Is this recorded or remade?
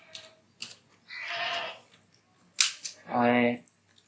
recorded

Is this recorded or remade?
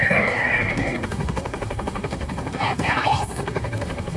remade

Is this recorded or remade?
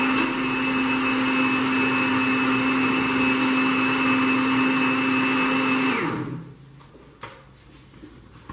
recorded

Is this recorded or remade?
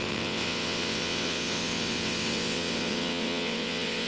remade